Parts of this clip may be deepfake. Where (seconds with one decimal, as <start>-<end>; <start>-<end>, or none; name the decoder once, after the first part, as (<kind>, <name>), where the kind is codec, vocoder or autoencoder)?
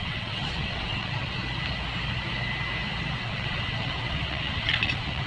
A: 0.0-1.4 (vocoder, WaveNeXt); 3.2-5.3